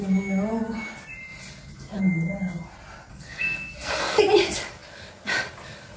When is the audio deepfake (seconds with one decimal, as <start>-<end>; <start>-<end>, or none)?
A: 3.1-4.2